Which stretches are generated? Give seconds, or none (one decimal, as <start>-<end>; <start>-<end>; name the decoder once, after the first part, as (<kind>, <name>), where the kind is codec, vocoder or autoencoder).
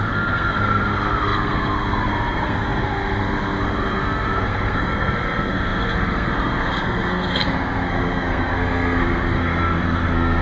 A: 0.0-10.4 (codec, SNAC)